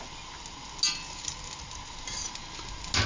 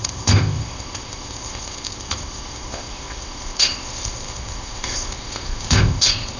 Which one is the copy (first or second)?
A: second